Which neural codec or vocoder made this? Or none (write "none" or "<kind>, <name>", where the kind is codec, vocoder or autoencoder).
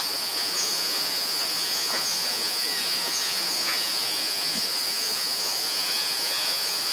vocoder, Vocos